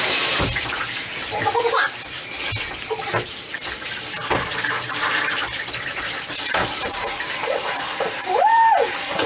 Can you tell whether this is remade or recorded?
remade